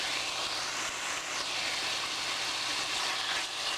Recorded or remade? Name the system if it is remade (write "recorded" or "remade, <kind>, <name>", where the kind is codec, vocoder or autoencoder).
recorded